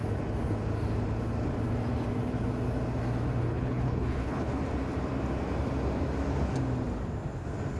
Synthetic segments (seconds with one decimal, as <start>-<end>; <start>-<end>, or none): 3.5-4.6